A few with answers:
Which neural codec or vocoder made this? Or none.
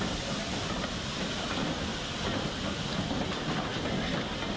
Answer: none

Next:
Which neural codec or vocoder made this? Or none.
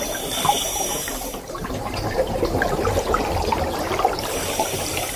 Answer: vocoder, BigVGAN v2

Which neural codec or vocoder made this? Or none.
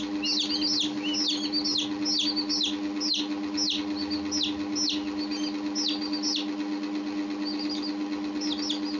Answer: none